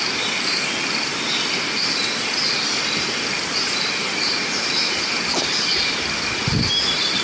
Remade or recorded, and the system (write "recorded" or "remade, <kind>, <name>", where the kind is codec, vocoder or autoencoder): recorded